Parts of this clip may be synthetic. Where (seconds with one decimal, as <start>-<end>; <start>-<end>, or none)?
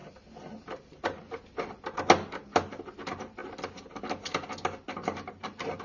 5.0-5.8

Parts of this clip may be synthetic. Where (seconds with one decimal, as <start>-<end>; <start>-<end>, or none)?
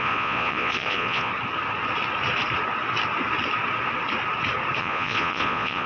0.0-1.3; 4.8-5.9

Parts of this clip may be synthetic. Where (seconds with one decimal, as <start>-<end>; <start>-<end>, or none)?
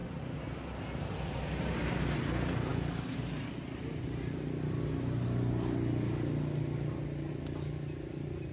none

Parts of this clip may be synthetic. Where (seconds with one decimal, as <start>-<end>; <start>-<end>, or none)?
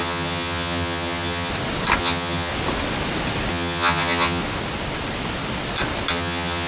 0.0-1.5; 2.0-2.5; 3.5-4.4; 6.1-6.7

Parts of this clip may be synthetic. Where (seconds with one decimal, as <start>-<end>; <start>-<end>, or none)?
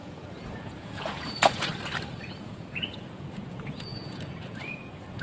0.0-1.7; 2.3-5.2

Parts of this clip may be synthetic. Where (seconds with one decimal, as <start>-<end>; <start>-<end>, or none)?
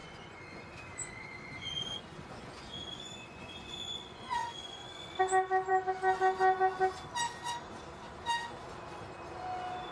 0.0-5.2